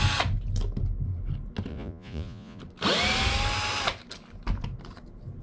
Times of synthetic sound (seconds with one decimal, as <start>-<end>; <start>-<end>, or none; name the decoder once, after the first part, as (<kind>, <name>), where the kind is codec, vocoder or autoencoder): 1.7-2.6 (vocoder, Vocos)